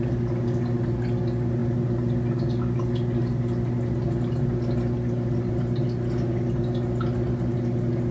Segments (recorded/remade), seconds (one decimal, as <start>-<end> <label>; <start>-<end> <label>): 0.0-8.1 recorded